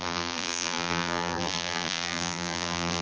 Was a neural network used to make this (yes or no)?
yes